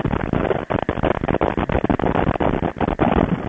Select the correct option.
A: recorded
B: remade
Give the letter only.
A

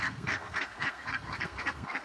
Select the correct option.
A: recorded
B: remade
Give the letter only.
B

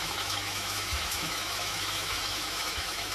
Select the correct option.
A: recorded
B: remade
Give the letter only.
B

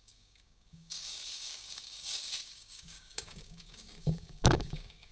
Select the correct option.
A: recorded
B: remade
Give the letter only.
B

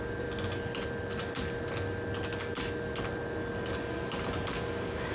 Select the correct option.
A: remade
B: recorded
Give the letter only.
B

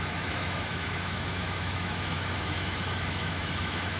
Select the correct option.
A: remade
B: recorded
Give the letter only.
A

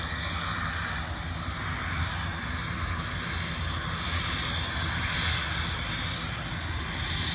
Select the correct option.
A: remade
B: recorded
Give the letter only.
B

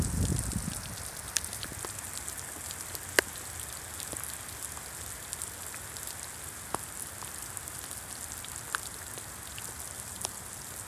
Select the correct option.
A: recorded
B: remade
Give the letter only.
A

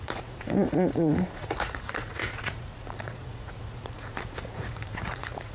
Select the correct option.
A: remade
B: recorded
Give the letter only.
A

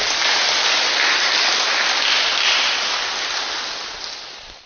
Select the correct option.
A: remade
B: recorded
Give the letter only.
B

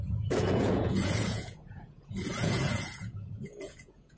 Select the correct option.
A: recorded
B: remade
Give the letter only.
B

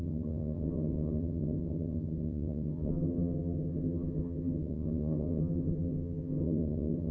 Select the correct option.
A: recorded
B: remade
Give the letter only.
B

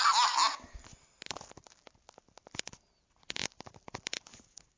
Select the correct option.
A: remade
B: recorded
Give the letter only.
B